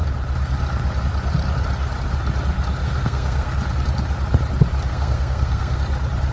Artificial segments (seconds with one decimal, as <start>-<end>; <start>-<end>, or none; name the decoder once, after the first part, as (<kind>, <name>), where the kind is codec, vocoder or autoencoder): 2.8-3.5 (codec, SNAC); 4.9-5.8